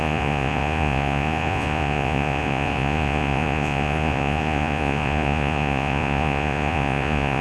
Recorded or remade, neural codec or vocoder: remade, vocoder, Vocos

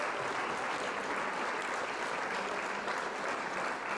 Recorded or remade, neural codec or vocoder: recorded